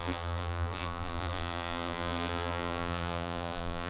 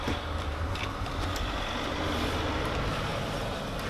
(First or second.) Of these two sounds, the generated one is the first